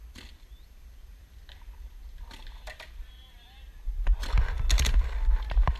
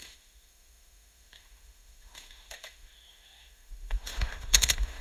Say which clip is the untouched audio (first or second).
first